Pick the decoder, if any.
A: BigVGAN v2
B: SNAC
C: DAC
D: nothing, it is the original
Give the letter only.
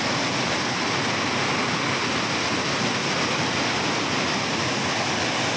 D